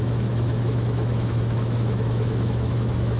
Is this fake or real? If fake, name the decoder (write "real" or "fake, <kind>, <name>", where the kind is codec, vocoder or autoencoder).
fake, autoencoder, DAC-VAE